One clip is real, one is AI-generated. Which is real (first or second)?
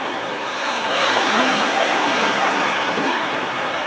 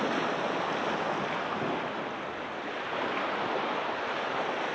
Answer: second